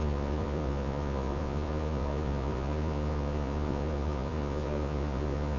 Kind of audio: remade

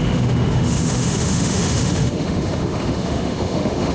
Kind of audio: remade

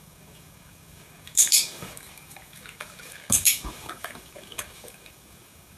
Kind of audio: remade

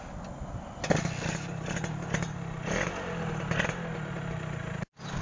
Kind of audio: recorded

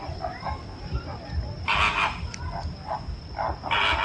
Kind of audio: recorded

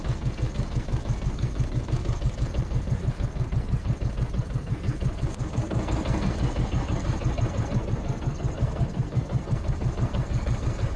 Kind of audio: remade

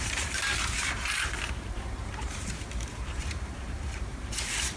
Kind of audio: remade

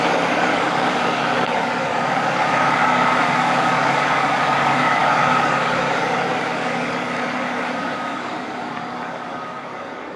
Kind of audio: remade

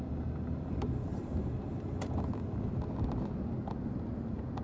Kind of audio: recorded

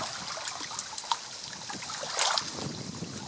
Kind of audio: recorded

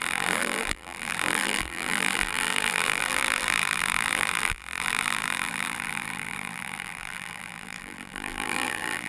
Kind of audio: remade